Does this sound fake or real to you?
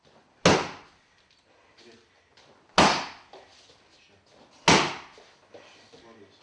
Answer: real